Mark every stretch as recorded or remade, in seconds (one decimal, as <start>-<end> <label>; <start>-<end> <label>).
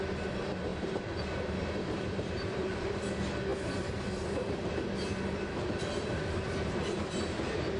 0.0-0.7 recorded; 0.7-2.7 remade; 2.7-7.8 recorded